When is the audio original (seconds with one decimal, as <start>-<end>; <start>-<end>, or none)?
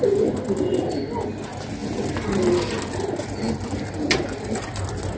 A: 0.0-5.2